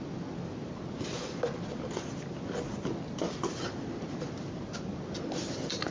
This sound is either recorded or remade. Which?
recorded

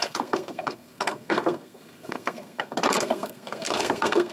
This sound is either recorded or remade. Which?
remade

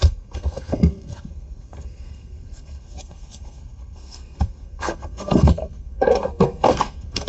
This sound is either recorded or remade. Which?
remade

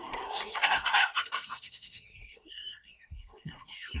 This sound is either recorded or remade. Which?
remade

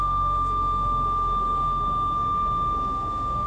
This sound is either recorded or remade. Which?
remade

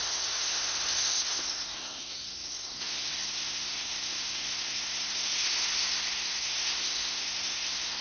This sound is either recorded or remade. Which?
remade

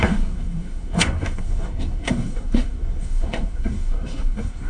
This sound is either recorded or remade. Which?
remade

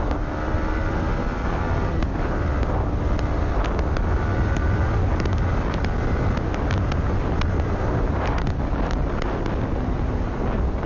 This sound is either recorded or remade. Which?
recorded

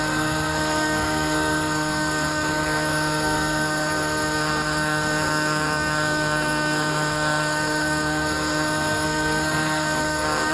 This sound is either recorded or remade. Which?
remade